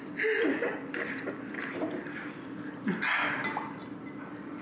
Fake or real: real